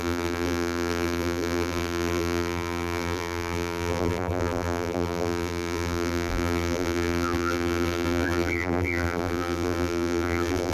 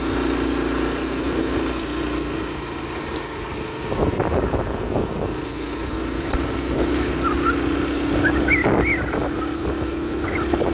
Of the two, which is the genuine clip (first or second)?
second